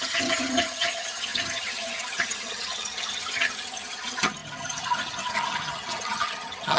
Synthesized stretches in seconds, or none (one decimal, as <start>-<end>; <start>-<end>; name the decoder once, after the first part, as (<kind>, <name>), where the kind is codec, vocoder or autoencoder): 0.0-6.8 (vocoder, HiFi-GAN)

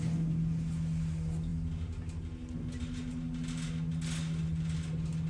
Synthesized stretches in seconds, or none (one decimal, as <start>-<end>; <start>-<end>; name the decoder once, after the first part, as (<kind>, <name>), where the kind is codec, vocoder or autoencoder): none

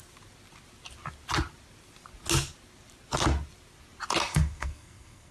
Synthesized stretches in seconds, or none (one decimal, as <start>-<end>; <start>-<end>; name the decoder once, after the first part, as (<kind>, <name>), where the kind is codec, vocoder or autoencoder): 4.3-5.3 (codec, SNAC)

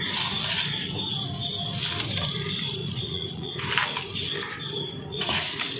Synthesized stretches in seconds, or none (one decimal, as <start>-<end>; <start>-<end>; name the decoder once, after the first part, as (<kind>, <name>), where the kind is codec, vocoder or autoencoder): 2.8-3.6 (vocoder, Vocos); 5.1-5.8